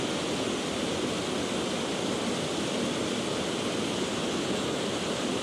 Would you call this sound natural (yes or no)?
yes